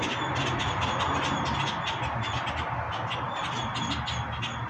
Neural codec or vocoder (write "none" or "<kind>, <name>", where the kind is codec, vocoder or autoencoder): none